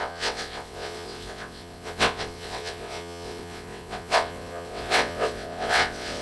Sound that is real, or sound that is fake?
fake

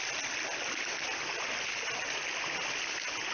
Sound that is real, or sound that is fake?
real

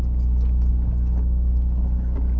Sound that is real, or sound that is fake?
real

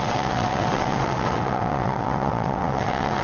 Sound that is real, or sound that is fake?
fake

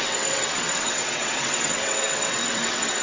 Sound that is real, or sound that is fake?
fake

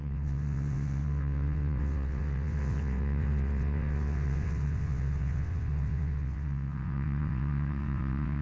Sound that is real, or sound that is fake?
fake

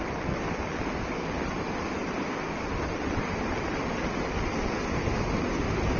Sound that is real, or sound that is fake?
real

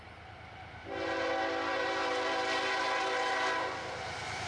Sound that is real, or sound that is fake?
real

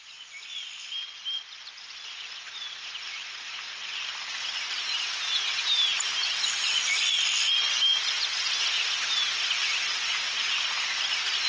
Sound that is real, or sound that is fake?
real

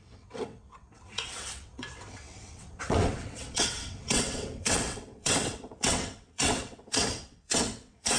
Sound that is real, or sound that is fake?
fake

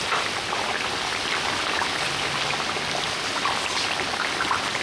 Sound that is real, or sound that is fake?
real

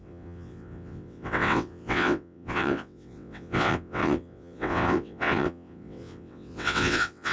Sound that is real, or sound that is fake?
fake